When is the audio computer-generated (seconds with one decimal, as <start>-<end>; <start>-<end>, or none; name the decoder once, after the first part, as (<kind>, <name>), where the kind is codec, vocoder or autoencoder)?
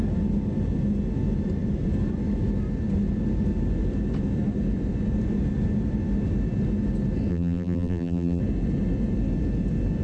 7.3-8.4 (vocoder, BigVGAN v2)